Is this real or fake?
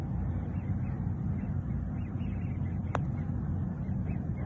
real